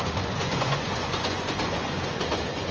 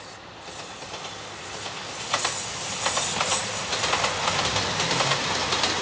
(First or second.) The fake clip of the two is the first